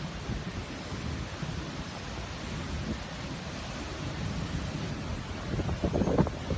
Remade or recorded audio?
recorded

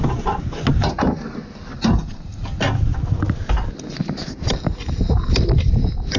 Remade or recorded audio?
recorded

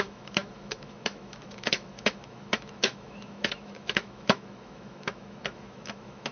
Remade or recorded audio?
remade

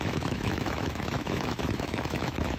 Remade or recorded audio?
remade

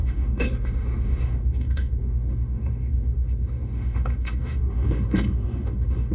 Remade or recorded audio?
remade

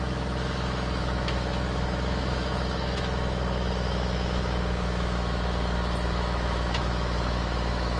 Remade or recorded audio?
remade